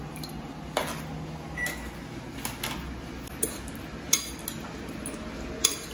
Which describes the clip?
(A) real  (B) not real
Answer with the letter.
A